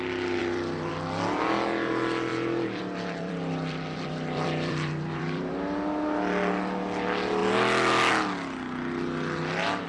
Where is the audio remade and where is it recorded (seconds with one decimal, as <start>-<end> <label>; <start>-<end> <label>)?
0.0-0.4 recorded; 0.4-0.9 remade; 0.9-2.3 recorded; 2.3-5.5 remade; 5.5-9.9 recorded

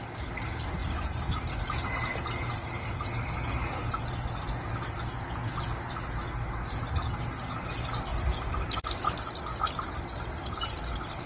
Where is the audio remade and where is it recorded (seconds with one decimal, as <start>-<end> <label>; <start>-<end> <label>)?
0.0-0.8 recorded; 0.8-1.5 remade; 1.5-8.1 recorded; 8.1-8.7 remade; 8.7-11.3 recorded

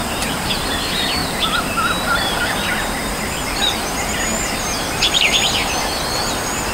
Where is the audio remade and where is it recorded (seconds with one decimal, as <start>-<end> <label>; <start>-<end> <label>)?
0.0-1.2 remade; 1.2-4.8 recorded; 4.8-5.6 remade; 5.6-6.7 recorded

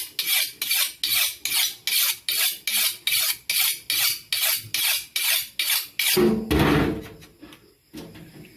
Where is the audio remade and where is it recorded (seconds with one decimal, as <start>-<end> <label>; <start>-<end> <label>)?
0.0-8.6 recorded

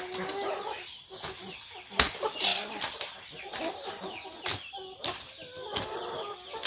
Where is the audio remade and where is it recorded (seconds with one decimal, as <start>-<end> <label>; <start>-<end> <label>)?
0.0-2.5 recorded; 2.5-3.4 remade; 3.4-5.5 recorded; 5.5-6.7 remade

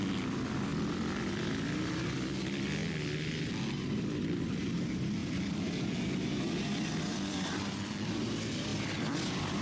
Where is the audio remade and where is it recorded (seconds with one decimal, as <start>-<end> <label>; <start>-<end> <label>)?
0.0-0.7 recorded; 0.7-1.4 remade; 1.4-5.2 recorded; 5.2-5.9 remade; 5.9-8.7 recorded; 8.7-9.6 remade